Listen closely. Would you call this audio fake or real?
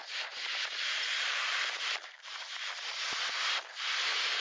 fake